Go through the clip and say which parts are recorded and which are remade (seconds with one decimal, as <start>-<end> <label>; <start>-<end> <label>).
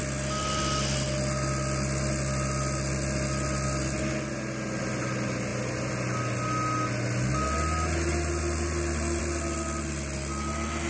0.0-10.9 recorded